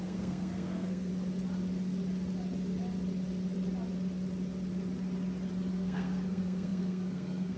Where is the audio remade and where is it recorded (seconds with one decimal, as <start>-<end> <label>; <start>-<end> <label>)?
0.0-1.1 remade; 1.1-5.7 recorded; 5.7-7.6 remade